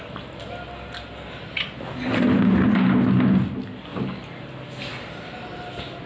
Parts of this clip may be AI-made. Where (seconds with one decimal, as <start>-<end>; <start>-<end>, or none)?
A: 3.9-4.5